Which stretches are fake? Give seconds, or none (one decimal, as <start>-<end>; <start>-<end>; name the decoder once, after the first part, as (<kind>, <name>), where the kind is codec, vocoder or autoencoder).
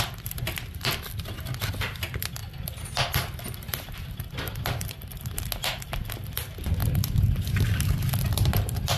none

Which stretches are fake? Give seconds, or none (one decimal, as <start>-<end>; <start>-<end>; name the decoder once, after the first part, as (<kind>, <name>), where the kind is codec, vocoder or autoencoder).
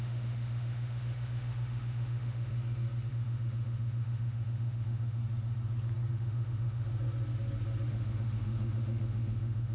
0.0-2.5 (autoencoder, DAC-VAE); 3.1-5.2; 6.1-6.9; 7.9-9.7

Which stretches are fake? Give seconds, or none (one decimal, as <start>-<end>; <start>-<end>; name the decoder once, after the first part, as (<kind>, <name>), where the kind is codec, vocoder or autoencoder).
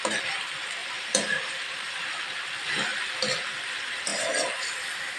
0.8-1.9 (vocoder, BigVGAN v2)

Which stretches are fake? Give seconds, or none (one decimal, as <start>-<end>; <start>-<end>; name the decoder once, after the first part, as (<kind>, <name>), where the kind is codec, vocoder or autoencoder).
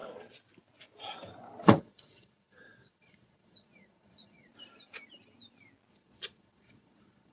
1.8-4.5 (vocoder, Vocos); 5.9-7.3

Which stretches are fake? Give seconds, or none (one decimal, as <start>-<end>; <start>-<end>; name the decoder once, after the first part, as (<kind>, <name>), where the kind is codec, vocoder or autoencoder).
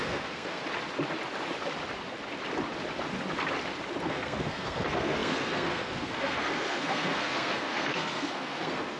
0.0-0.6 (codec, SNAC); 4.0-9.0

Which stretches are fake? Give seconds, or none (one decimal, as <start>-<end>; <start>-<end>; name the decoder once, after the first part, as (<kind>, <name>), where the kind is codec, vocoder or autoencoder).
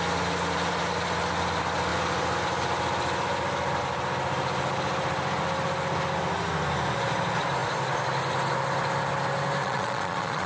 9.6-10.5 (vocoder, Vocos)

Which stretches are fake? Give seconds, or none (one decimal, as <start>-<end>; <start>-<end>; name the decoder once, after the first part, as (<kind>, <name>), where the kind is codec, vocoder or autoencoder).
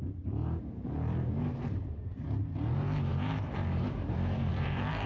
0.0-5.1 (vocoder, BigVGAN v2)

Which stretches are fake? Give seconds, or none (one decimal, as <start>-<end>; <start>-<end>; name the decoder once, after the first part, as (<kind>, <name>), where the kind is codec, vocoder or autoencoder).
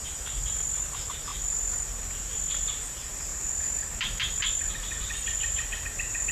none